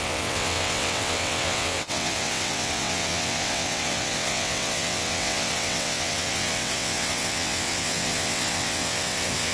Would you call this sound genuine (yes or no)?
no